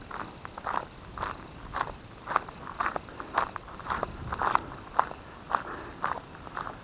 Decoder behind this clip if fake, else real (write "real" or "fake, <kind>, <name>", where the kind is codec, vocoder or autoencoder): real